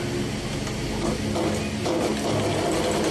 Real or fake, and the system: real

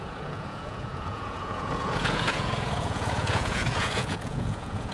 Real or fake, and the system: fake, vocoder, Vocos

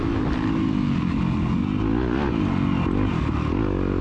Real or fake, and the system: real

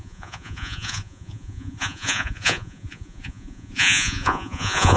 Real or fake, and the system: fake, vocoder, Vocos